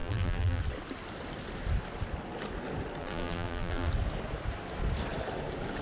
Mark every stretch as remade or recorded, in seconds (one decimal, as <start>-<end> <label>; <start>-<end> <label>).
0.0-0.6 remade; 0.6-3.0 recorded; 3.0-3.9 remade; 3.9-5.8 recorded